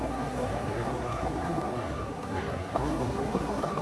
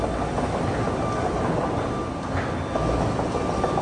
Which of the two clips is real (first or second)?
second